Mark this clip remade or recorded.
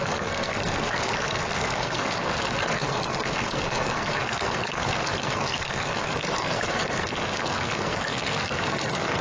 remade